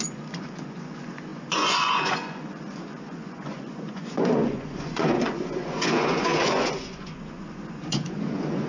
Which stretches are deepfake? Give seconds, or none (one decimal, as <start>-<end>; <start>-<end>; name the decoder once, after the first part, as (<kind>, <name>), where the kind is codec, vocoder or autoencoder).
0.0-8.7 (vocoder, Vocos)